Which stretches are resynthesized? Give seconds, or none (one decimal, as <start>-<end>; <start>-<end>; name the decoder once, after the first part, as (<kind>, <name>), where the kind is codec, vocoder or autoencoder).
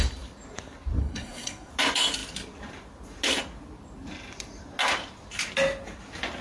1.0-1.7 (codec, SNAC)